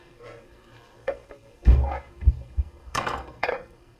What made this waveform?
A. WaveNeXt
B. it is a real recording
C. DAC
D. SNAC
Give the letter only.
D